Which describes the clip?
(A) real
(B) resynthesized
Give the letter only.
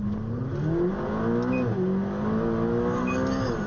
A